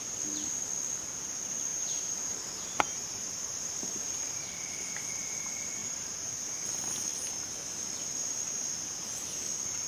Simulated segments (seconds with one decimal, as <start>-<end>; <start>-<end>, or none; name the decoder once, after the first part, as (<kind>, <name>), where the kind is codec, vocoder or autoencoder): 1.7-4.4 (vocoder, BigVGAN v2); 5.8-6.5